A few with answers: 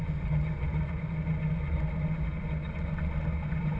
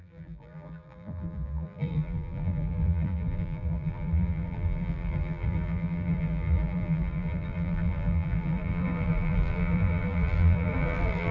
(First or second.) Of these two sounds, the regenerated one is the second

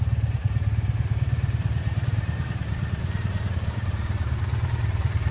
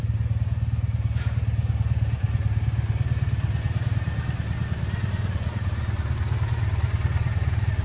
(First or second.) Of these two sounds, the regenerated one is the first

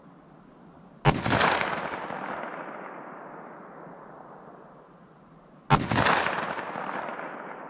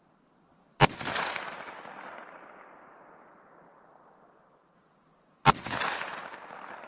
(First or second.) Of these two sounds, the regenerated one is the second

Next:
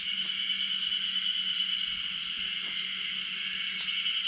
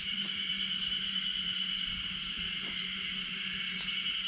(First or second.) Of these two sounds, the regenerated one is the second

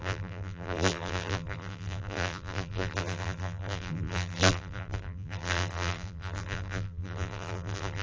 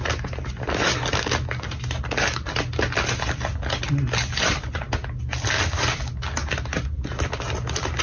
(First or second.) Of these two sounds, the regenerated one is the first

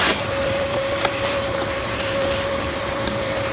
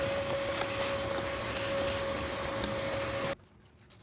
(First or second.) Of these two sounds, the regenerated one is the first